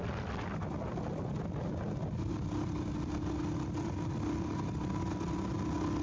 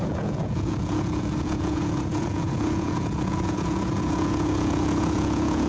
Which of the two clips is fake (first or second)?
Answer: second